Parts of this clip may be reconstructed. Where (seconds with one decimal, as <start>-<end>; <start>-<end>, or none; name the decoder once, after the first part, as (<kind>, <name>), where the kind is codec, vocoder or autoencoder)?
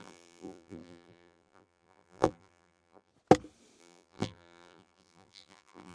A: 0.0-3.1 (vocoder, BigVGAN v2); 3.8-5.9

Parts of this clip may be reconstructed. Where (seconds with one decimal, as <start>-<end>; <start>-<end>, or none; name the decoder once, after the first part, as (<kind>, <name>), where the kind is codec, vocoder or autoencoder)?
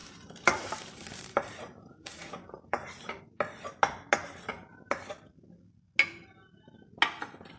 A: 0.0-3.2 (vocoder, BigVGAN v2)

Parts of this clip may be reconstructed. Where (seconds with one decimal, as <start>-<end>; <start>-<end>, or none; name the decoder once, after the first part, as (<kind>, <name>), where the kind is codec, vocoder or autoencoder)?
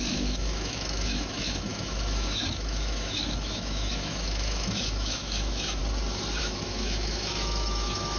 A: 0.0-5.8 (autoencoder, DAC-VAE); 6.4-8.2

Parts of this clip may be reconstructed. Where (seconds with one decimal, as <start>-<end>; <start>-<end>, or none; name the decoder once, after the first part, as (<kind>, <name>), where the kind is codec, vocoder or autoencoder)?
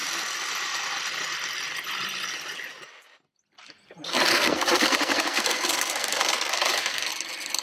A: 4.3-7.1 (codec, SNAC)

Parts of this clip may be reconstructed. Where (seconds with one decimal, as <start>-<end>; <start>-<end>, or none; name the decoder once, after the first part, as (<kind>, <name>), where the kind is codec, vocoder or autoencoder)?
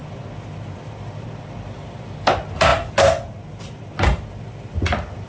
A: none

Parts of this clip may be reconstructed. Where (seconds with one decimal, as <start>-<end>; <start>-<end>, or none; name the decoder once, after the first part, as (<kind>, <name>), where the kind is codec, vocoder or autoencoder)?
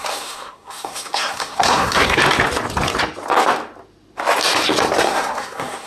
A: 0.0-2.2 (codec, SNAC); 5.0-5.9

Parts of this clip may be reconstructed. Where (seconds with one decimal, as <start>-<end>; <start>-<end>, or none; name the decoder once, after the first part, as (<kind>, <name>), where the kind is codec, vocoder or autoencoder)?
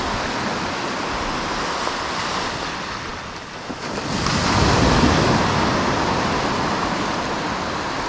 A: none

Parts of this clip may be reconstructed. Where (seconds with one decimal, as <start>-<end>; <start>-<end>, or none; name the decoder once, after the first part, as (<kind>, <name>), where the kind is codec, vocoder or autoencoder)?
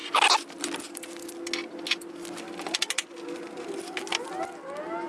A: none